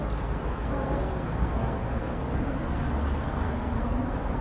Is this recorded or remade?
remade